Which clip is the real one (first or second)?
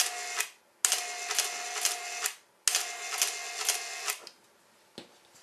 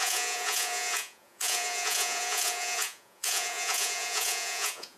first